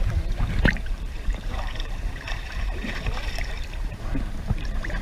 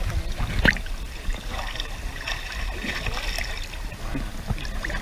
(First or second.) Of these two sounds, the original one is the second